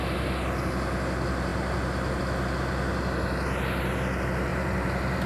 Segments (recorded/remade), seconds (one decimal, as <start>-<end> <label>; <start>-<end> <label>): 0.0-4.5 recorded; 4.5-5.3 remade